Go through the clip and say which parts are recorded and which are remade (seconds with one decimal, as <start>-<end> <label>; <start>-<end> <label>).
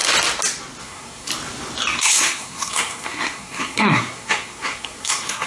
0.0-0.8 recorded; 0.8-1.3 remade; 1.3-2.0 recorded; 2.0-5.5 remade